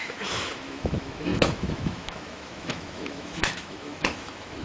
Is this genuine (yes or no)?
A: no